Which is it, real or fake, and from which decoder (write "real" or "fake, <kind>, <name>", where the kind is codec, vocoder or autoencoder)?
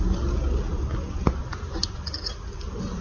real